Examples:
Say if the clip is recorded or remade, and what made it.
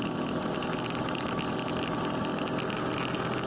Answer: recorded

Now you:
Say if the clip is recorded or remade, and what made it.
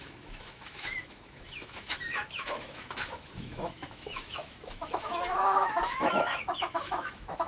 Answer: remade, autoencoder, DAC-VAE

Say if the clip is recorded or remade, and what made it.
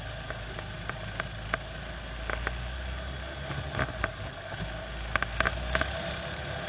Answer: recorded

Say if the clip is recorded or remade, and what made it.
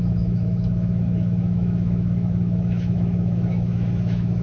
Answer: remade, autoencoder, DAC-VAE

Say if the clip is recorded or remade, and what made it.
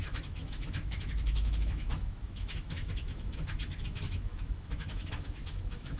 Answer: remade, autoencoder, DAC-VAE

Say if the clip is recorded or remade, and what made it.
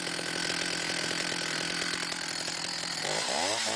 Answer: recorded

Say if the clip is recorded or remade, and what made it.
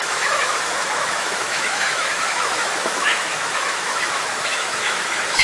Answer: remade, autoencoder, DAC-VAE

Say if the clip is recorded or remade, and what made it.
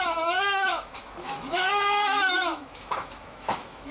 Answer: remade, autoencoder, DAC-VAE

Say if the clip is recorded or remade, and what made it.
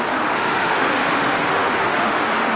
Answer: remade, autoencoder, DAC-VAE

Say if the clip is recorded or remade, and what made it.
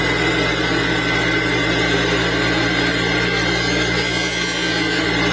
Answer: recorded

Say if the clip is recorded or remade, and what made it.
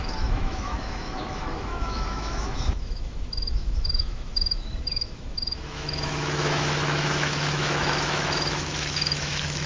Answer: remade, autoencoder, DAC-VAE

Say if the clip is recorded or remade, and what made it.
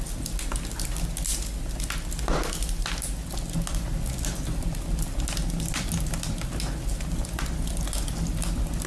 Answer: recorded